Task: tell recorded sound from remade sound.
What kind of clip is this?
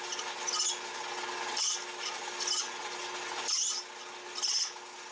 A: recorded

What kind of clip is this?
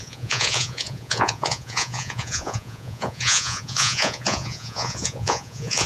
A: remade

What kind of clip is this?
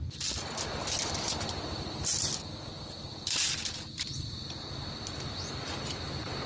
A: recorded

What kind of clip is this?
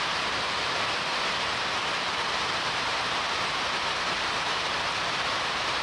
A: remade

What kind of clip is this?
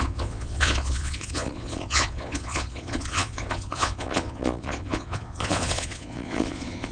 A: remade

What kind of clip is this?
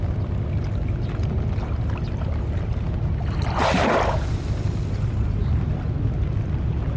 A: recorded